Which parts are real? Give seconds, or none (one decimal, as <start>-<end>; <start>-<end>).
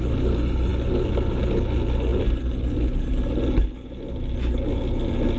0.0-5.4